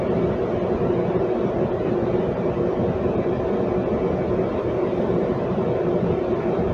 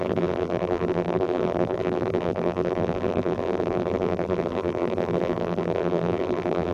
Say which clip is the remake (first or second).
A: second